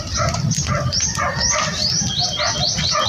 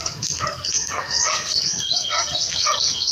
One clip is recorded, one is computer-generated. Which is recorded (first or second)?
first